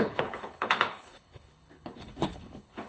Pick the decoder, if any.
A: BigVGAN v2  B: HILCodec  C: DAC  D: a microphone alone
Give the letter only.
B